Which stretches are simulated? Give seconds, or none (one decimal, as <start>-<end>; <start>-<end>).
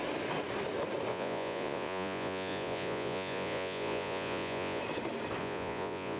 1.1-4.8; 5.4-6.2